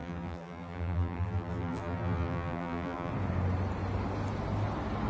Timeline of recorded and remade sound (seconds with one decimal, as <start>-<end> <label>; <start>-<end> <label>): 0.0-3.1 remade; 3.1-5.1 recorded